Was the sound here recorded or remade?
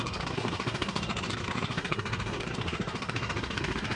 remade